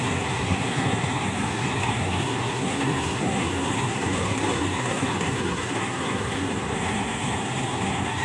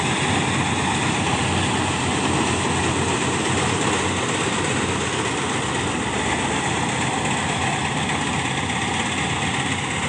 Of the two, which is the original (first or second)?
second